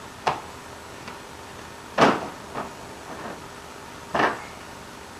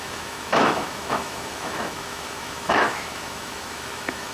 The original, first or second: first